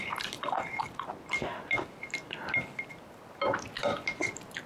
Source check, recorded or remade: recorded